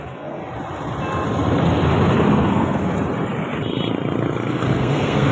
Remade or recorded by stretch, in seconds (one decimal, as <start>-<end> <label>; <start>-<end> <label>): 0.0-0.4 remade; 0.4-2.3 recorded; 2.3-2.9 remade; 2.9-4.5 recorded; 4.5-5.3 remade